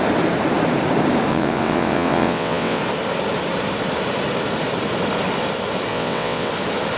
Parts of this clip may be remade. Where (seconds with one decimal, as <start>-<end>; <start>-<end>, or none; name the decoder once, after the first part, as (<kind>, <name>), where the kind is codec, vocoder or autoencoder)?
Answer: 1.3-2.8 (vocoder, WaveNeXt); 5.9-6.5